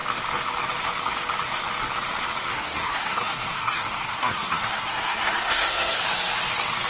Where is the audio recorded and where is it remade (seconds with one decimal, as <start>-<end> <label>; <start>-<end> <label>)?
0.0-2.5 recorded; 2.5-6.0 remade; 6.0-6.9 recorded